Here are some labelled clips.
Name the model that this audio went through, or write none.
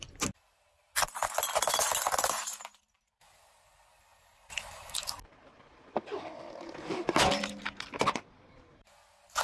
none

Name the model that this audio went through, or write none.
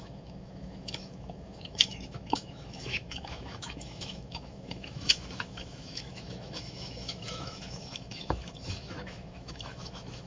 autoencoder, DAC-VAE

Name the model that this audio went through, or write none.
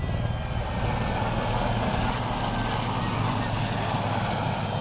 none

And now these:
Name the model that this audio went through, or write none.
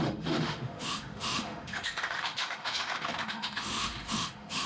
autoencoder, DAC-VAE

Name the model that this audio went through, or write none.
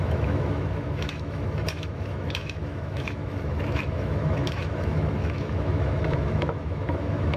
autoencoder, DAC-VAE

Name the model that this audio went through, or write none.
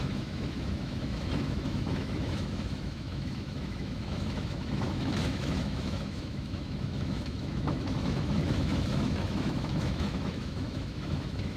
autoencoder, DAC-VAE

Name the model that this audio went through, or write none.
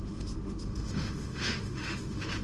autoencoder, DAC-VAE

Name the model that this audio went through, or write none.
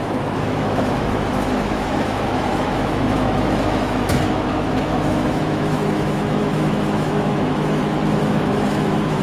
autoencoder, DAC-VAE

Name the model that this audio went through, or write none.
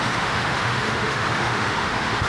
autoencoder, DAC-VAE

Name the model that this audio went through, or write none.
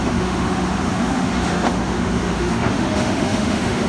autoencoder, DAC-VAE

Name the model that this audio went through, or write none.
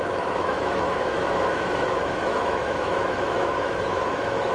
autoencoder, DAC-VAE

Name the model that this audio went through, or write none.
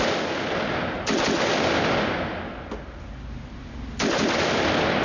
none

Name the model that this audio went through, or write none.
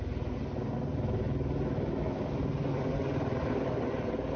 none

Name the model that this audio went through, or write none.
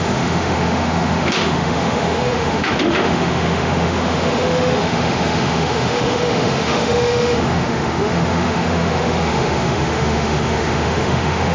autoencoder, DAC-VAE